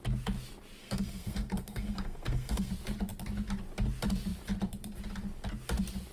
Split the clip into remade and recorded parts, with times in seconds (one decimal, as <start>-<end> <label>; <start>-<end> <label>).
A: 0.0-0.8 recorded; 0.8-2.7 remade; 2.7-6.1 recorded